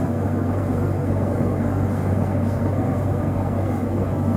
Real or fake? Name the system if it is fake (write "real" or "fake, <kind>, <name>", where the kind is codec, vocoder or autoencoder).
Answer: fake, codec, SNAC